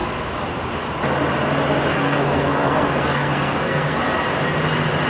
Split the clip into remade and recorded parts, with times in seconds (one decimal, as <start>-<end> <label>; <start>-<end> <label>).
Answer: 0.0-1.9 recorded; 1.9-4.0 remade; 4.0-5.1 recorded